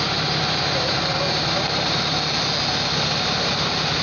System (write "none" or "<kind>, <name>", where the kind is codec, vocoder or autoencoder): none